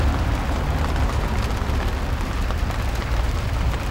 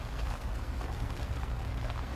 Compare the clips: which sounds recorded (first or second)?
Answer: first